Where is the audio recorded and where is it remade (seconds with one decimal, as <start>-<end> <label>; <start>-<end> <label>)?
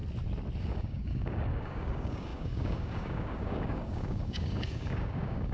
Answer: 0.0-0.6 recorded; 0.6-5.5 remade